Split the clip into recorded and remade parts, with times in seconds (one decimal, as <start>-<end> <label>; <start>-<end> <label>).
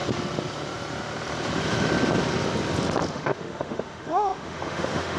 0.0-3.1 recorded; 3.1-5.2 remade